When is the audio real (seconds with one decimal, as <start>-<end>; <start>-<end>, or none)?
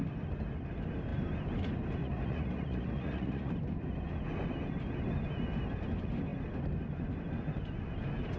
0.0-2.0; 3.5-8.4